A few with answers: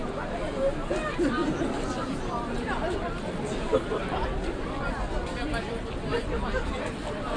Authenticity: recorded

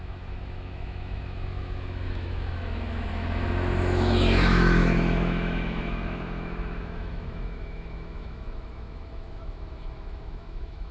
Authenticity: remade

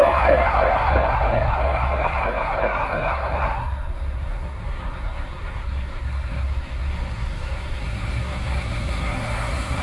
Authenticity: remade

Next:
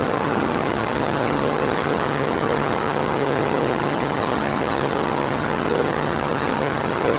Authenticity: remade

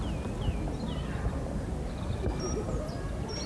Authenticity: recorded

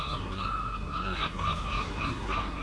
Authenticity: remade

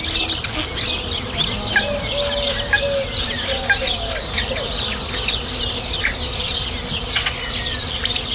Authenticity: recorded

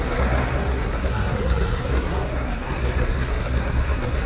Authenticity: remade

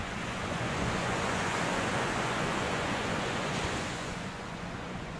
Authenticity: remade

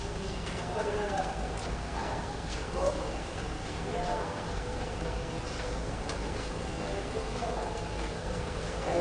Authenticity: remade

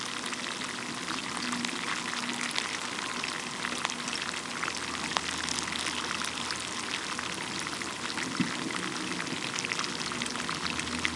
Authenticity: recorded